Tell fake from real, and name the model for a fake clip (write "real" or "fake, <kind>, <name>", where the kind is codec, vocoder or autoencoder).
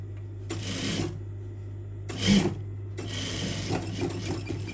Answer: real